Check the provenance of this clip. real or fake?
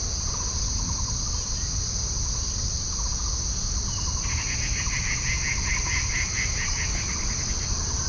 real